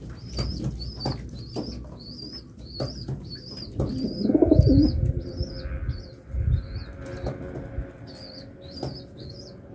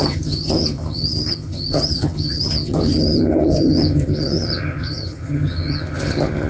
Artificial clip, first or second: second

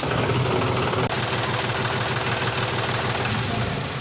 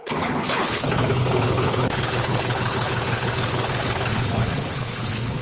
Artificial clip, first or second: second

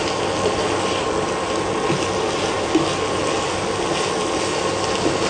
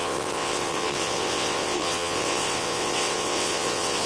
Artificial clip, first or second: second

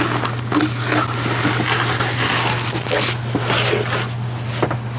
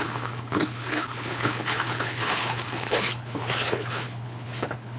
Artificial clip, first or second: second